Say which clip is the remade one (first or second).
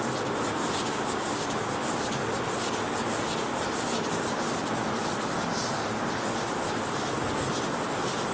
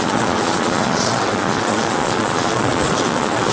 second